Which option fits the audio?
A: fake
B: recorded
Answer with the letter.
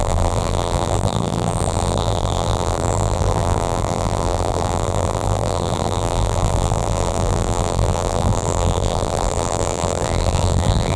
A